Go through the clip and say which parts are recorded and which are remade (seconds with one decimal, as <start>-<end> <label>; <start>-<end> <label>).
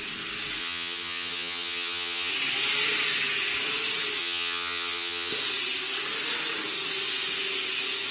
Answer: 0.0-0.6 recorded; 0.6-2.3 remade; 2.3-4.2 recorded; 4.2-5.3 remade; 5.3-8.1 recorded